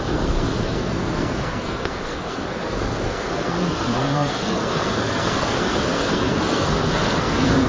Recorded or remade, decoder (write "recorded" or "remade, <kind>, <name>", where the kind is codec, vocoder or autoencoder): remade, codec, SNAC